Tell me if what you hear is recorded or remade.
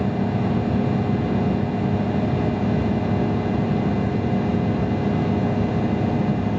recorded